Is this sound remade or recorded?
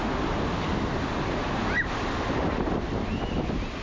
recorded